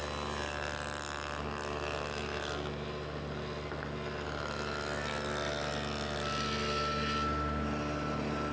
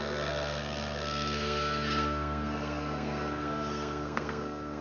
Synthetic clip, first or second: second